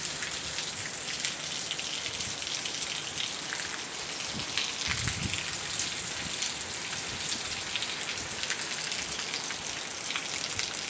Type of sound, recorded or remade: recorded